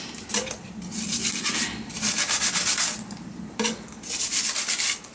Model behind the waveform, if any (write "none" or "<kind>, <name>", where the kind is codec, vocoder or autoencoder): none